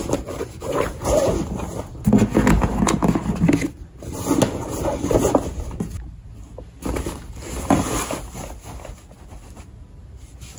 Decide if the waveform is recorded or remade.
recorded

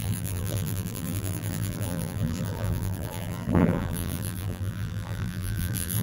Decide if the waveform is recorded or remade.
remade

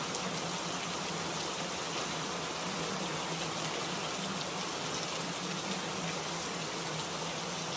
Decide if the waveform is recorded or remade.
recorded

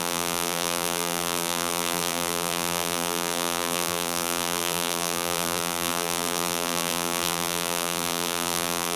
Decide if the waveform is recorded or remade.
remade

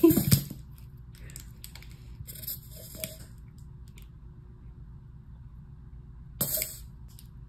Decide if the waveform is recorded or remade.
recorded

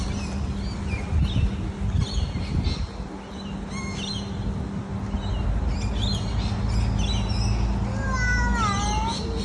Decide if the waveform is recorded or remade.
recorded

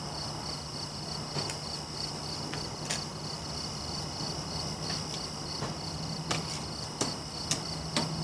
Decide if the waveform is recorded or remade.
recorded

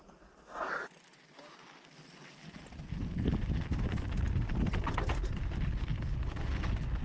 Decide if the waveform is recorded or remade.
recorded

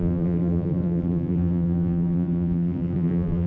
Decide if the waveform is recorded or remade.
remade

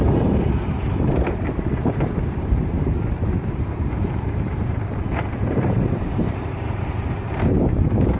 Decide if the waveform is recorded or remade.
remade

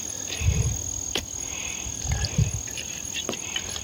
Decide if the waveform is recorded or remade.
remade